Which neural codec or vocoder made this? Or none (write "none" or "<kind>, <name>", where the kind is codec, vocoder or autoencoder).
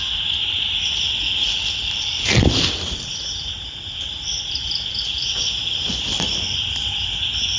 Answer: vocoder, BigVGAN v2